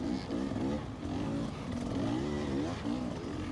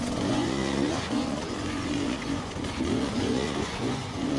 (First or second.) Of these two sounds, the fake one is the second